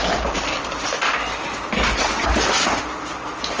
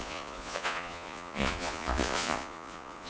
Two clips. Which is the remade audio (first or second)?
second